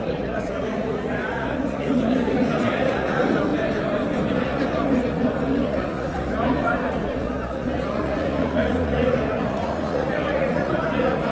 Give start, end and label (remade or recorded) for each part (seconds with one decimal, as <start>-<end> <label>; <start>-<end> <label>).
0.0-3.5 remade; 3.5-4.2 recorded; 4.2-11.3 remade